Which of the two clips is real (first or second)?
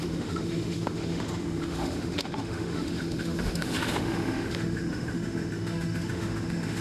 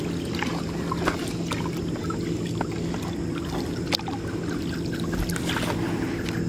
second